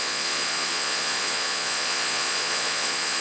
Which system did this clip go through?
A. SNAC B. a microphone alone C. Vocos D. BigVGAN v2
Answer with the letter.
C